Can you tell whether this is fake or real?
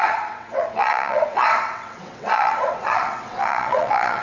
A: fake